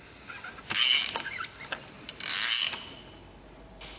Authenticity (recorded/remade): recorded